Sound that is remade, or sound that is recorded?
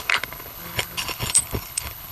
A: remade